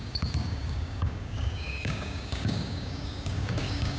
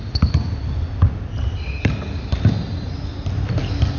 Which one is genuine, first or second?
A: second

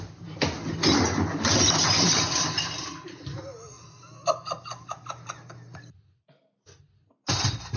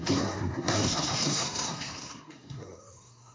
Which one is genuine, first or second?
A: first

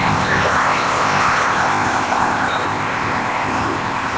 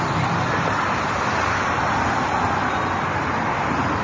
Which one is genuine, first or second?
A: second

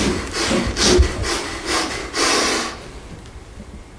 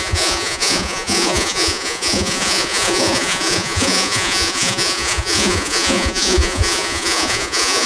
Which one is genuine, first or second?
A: first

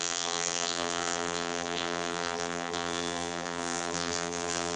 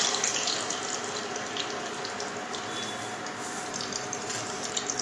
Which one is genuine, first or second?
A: second